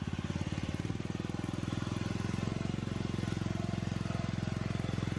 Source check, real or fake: real